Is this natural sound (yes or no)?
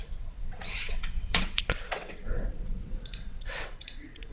no